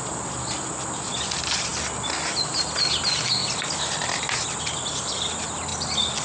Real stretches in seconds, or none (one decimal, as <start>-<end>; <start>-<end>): 0.0-6.2